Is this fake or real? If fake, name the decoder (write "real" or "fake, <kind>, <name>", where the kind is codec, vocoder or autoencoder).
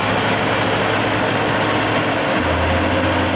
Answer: real